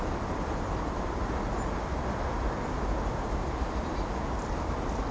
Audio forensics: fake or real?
real